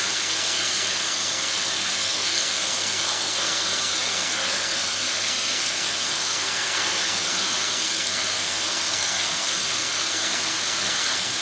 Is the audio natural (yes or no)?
no